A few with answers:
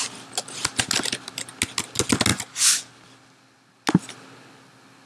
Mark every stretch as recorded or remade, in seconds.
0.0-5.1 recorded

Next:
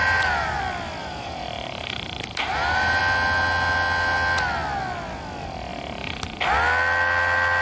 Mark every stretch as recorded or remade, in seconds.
0.0-0.6 remade; 0.6-1.0 recorded; 1.0-3.0 remade; 3.0-7.6 recorded

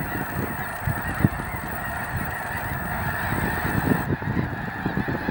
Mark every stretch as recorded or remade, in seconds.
0.0-0.7 recorded; 0.7-2.6 remade; 2.6-5.3 recorded

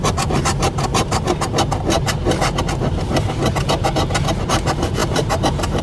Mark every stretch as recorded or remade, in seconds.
0.0-5.0 recorded; 5.0-5.8 remade

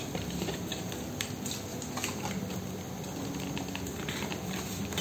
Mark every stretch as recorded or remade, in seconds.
0.0-5.0 remade

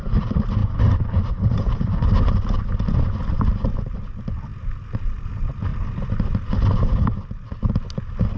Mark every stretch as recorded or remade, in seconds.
0.0-0.6 recorded; 0.6-2.1 remade; 2.1-8.4 recorded